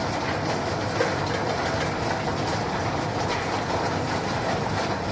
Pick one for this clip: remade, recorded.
recorded